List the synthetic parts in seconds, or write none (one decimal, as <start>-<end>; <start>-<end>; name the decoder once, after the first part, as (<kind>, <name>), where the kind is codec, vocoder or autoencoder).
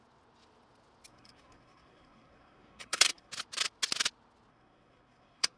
1.1-3.3 (codec, SNAC); 4.5-5.6